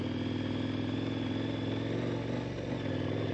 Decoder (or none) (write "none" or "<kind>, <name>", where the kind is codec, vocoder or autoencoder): none